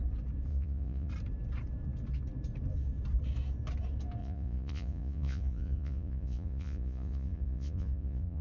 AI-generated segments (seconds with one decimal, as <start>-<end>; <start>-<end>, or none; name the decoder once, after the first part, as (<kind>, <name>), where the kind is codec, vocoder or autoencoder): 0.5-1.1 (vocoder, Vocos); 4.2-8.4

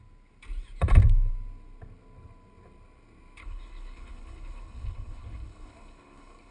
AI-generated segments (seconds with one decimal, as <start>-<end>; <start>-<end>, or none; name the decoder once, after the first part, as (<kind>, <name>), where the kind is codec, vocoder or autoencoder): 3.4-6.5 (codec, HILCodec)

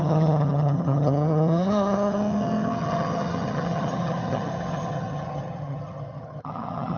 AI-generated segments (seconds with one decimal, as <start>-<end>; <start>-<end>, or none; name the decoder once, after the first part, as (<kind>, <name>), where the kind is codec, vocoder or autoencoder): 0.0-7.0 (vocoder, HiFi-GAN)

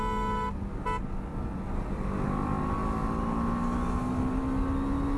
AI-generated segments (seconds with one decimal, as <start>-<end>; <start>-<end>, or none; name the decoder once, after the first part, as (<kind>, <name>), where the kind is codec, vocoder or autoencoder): none